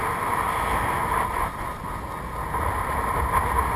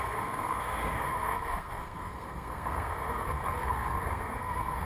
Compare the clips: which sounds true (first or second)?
first